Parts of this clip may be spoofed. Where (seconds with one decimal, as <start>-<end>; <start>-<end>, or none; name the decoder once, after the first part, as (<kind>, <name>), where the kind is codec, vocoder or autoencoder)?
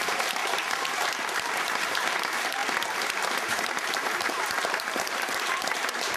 0.0-2.6 (vocoder, BigVGAN v2); 3.3-6.2